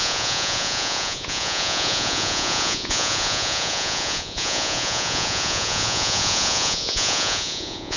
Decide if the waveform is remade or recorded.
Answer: remade